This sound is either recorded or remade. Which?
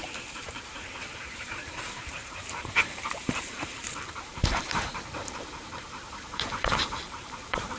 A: remade